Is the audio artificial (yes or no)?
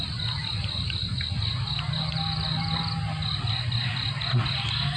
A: no